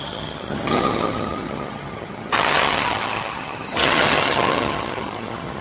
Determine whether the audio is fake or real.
fake